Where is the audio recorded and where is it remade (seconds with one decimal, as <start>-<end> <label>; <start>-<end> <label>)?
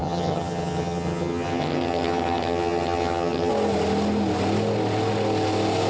0.0-3.5 remade; 3.5-5.9 recorded